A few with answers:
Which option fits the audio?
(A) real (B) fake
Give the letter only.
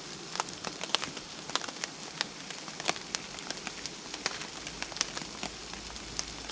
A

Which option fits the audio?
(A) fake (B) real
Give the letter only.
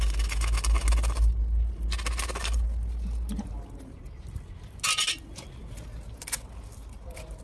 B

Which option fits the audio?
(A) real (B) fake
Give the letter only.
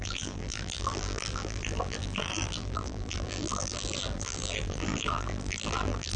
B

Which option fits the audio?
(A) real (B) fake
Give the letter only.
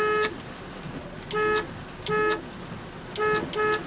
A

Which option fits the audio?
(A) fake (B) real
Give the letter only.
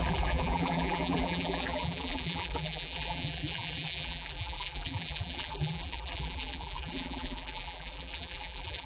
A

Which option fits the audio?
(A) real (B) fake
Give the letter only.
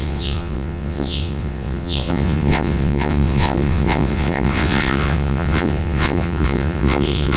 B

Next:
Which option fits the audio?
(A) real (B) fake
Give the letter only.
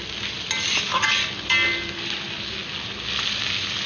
A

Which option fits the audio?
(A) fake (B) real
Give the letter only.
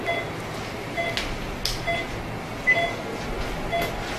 B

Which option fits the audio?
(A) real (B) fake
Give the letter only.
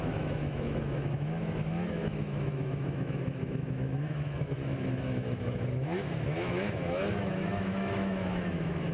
B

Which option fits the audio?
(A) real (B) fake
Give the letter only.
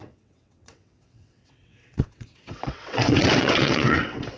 B